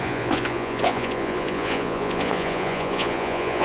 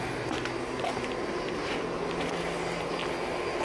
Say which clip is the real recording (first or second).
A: second